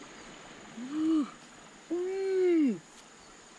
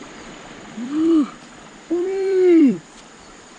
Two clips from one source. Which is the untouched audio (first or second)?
first